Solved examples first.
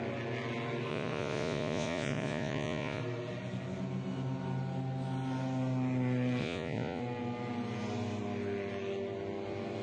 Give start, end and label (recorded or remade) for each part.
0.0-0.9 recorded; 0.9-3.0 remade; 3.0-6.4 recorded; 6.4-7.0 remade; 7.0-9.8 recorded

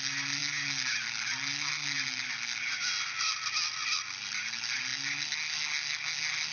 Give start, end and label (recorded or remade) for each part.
0.0-6.5 recorded

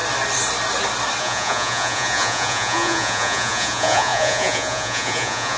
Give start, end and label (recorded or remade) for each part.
0.0-1.2 recorded; 1.2-5.6 remade

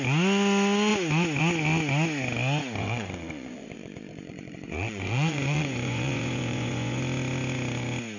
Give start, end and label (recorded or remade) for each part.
0.0-2.8 recorded; 2.8-7.0 remade; 7.0-8.2 recorded